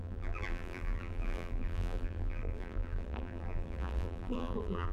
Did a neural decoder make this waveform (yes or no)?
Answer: yes